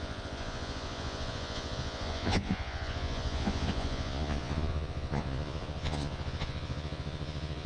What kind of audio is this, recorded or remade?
remade